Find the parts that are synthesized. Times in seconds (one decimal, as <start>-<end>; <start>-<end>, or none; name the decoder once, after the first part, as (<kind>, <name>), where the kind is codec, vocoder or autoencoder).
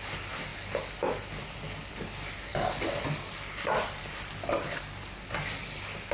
none